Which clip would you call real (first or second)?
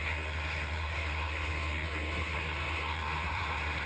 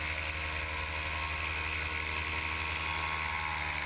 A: second